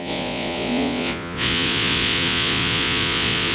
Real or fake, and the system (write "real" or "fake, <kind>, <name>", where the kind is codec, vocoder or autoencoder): fake, vocoder, Vocos